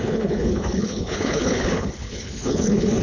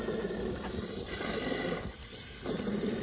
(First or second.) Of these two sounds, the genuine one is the second